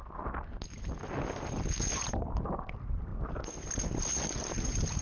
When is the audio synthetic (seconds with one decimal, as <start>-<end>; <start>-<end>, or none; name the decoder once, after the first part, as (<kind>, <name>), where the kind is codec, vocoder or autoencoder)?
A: none